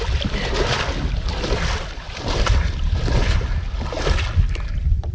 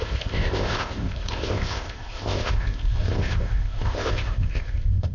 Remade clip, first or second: second